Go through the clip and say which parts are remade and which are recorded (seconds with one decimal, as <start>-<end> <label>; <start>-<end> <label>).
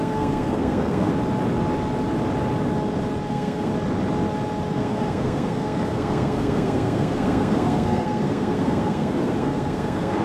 0.0-1.1 remade; 1.1-3.3 recorded; 3.3-3.7 remade; 3.7-4.7 recorded; 4.7-10.2 remade